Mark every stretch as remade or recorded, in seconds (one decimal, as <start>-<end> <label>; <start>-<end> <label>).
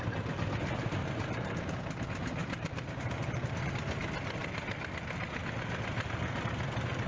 0.0-1.0 recorded; 1.0-1.8 remade; 1.8-2.4 recorded; 2.4-3.1 remade; 3.1-7.1 recorded